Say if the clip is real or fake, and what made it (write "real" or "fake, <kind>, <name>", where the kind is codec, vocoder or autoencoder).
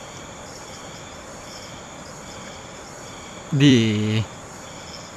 fake, vocoder, BigVGAN v2